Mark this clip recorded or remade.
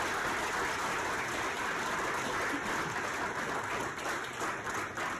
recorded